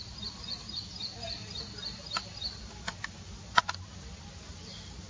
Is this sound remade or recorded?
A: recorded